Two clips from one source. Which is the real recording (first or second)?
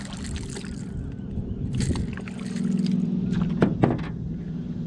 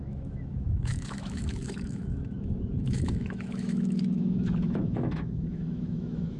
first